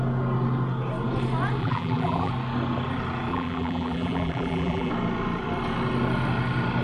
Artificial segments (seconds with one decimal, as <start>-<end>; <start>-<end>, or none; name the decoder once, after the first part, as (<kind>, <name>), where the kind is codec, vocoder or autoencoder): 1.6-2.3 (vocoder, BigVGAN v2); 3.3-4.9